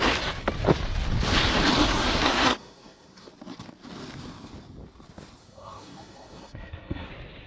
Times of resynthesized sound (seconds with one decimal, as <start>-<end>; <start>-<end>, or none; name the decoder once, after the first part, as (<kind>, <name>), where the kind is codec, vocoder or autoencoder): 1.9-3.3 (codec, SNAC); 5.4-7.1